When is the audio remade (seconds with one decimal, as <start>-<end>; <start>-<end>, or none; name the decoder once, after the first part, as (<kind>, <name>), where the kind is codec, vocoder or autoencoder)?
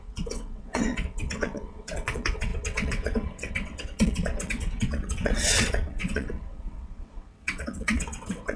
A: 0.0-8.6 (vocoder, WaveNeXt)